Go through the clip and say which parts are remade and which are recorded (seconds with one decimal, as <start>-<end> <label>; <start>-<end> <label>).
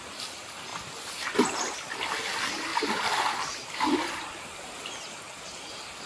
0.0-6.1 recorded